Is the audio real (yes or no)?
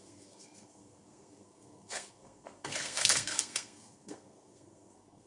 no